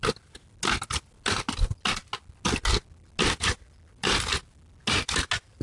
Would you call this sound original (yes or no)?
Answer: yes